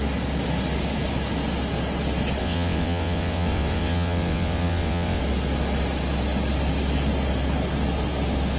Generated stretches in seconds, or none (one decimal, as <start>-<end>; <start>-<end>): 2.4-5.2

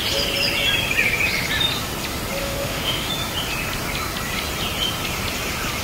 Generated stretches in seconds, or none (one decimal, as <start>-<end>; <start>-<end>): 2.4-3.1

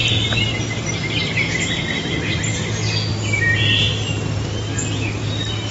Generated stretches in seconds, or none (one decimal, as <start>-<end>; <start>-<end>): 0.0-0.5